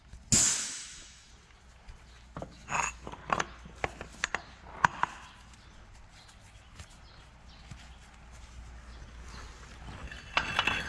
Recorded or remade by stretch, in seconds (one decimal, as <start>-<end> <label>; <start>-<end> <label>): 0.0-0.6 recorded; 0.6-1.3 remade; 1.3-10.9 recorded